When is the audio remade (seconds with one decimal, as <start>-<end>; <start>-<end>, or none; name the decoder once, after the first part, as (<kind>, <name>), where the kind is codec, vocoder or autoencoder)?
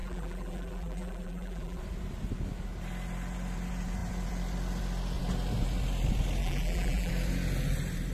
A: 0.0-1.8 (vocoder, BigVGAN v2); 6.4-7.1